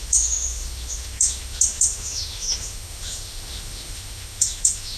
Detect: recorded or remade remade